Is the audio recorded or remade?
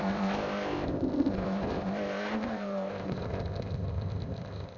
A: remade